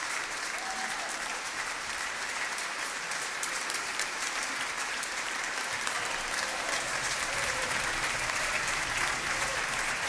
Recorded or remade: remade